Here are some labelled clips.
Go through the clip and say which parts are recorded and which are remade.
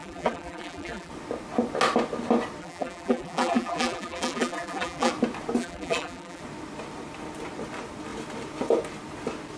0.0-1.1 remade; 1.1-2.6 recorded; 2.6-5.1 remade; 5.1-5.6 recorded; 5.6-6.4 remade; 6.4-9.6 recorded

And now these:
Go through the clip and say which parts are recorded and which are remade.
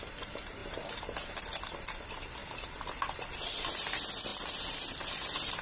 0.0-0.6 remade; 0.6-1.3 recorded; 1.3-2.4 remade; 2.4-3.1 recorded; 3.1-4.3 remade; 4.3-5.1 recorded; 5.1-5.6 remade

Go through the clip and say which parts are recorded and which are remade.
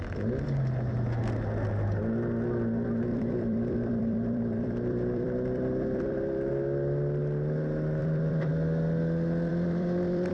0.0-3.1 recorded; 3.1-6.5 remade; 6.5-8.0 recorded; 8.0-8.5 remade; 8.5-9.5 recorded; 9.5-10.3 remade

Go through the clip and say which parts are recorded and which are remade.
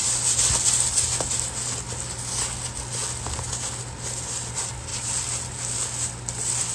0.0-6.7 recorded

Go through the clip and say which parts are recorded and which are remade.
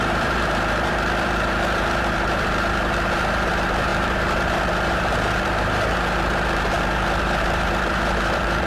0.0-8.7 remade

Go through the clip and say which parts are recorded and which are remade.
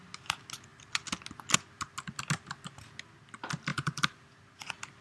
0.0-3.7 recorded; 3.7-4.2 remade; 4.2-5.0 recorded